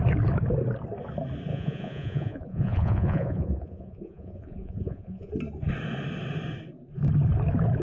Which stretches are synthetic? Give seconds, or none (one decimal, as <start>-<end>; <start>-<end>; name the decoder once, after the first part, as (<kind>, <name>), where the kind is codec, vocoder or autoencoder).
1.5-5.3 (vocoder, Vocos)